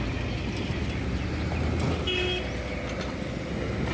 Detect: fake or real real